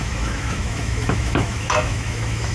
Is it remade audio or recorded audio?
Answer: remade